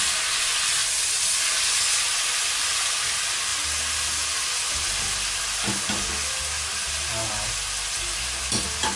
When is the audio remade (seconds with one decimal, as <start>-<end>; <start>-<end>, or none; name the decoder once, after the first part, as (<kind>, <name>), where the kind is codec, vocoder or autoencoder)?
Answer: none